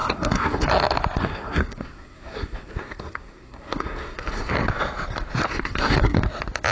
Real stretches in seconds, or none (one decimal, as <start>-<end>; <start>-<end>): 0.7-1.2; 4.5-5.5; 6.2-6.7